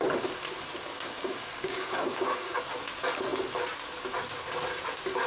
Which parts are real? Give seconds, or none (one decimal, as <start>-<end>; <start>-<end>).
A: 0.0-0.9; 2.6-5.3